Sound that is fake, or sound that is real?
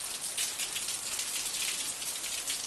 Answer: real